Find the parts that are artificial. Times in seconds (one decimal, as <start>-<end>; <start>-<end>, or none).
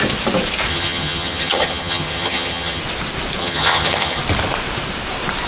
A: 0.7-2.8; 3.4-4.2